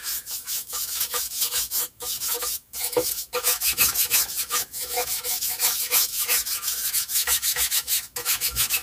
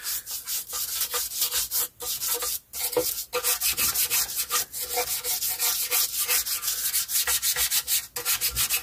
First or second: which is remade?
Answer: first